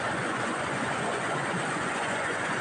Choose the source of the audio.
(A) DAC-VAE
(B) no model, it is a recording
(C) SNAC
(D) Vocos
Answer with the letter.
D